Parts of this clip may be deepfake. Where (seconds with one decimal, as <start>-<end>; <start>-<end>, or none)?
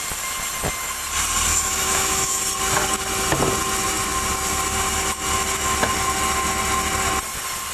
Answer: 1.5-2.4